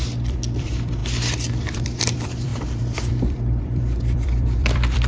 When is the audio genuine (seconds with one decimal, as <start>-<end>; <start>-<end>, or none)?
none